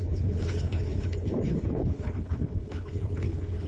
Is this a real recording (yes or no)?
no